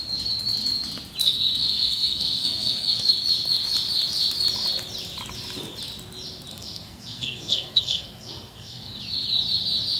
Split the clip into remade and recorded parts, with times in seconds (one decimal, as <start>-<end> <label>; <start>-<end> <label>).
0.0-1.2 recorded; 1.2-3.1 remade; 3.1-6.5 recorded; 6.5-9.0 remade; 9.0-10.0 recorded